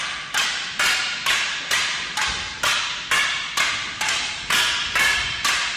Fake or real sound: real